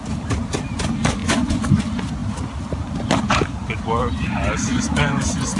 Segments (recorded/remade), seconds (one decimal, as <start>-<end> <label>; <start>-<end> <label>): 0.0-1.2 recorded; 1.2-1.8 remade; 1.8-4.7 recorded; 4.7-5.6 remade